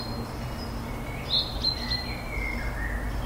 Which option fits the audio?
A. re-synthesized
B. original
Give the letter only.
B